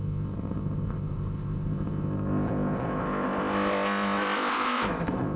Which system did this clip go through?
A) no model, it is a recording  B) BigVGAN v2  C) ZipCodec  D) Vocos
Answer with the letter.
C